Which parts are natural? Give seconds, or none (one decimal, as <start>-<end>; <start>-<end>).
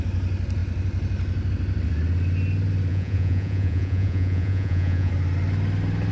0.0-2.9; 5.1-6.1